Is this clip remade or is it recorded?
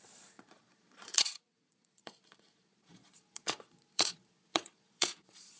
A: remade